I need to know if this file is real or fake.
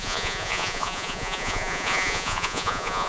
fake